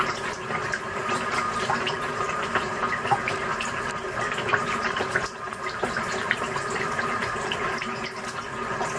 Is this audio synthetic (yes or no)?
yes